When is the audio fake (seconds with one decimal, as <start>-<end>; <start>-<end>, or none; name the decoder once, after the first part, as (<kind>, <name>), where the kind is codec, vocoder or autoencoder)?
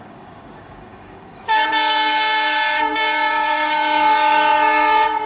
0.0-5.3 (codec, DAC)